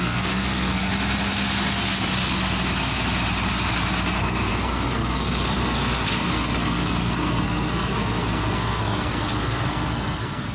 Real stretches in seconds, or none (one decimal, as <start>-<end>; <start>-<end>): 0.9-4.5